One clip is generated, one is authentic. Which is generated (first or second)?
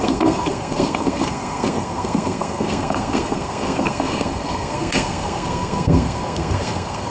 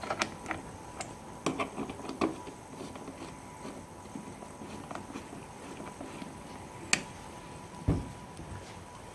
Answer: first